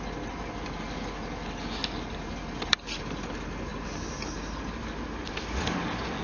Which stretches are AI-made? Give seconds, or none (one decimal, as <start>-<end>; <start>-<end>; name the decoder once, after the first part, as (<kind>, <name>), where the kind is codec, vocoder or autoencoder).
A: none